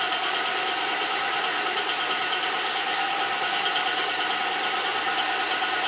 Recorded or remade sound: recorded